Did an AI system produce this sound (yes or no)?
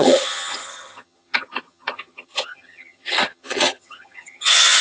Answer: yes